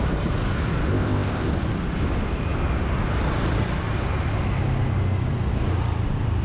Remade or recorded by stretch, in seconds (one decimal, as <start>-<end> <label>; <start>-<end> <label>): 0.0-0.9 recorded; 0.9-1.5 remade; 1.5-6.4 recorded